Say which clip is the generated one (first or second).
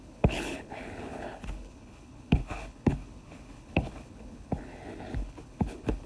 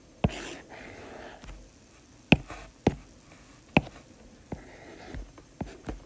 first